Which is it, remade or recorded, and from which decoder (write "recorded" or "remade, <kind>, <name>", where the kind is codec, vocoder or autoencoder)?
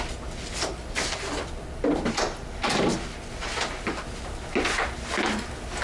recorded